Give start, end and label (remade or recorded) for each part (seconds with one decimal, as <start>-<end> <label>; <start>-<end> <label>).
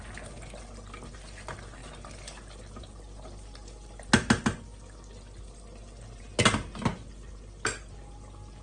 0.0-8.6 recorded